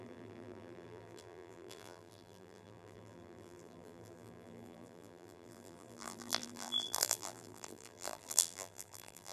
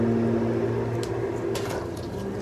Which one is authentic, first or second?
second